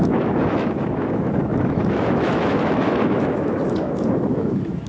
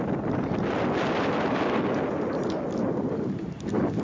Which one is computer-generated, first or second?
first